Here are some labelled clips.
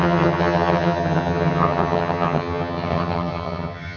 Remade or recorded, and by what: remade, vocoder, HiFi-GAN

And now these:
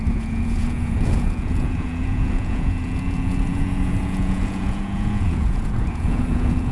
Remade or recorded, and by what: remade, vocoder, Vocos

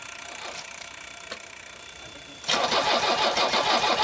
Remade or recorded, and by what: remade, vocoder, BigVGAN v2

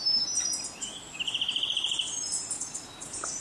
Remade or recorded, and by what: recorded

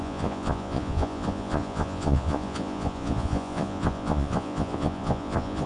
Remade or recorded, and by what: remade, vocoder, Vocos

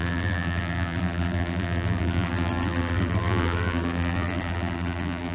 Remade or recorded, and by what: remade, vocoder, BigVGAN v2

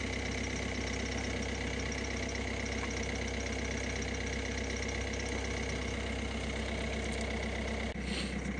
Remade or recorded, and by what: recorded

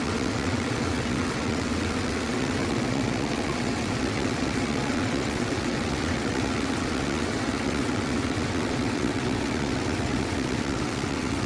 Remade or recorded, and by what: remade, vocoder, WaveNeXt